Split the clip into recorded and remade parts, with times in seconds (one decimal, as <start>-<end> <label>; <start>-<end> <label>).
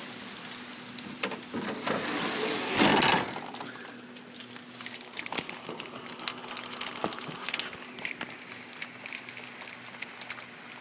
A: 0.0-10.8 recorded